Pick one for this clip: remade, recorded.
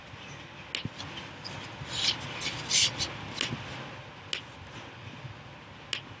recorded